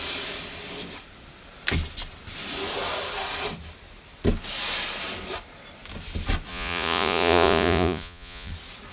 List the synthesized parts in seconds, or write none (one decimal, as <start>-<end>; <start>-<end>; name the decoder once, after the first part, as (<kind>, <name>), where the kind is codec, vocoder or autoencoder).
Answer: 6.5-8.5 (vocoder, Vocos)